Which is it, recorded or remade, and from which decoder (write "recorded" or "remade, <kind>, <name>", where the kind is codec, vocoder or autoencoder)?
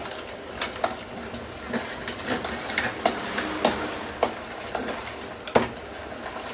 recorded